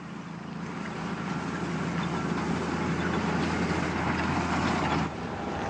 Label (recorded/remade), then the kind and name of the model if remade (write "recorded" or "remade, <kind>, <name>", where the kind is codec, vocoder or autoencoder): recorded